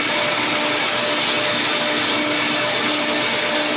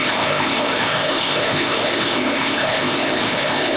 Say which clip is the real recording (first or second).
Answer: first